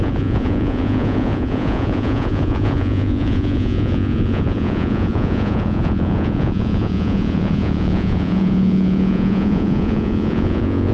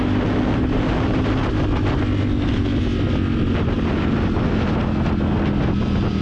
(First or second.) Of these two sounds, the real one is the second